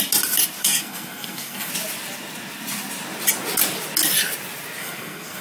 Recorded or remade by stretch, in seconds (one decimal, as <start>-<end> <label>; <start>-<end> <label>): 0.0-0.6 recorded; 0.6-1.7 remade; 1.7-4.8 recorded; 4.8-5.4 remade